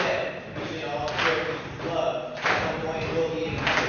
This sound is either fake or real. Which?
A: real